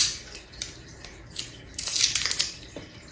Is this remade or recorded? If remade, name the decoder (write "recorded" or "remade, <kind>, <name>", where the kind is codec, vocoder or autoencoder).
remade, vocoder, BigVGAN v2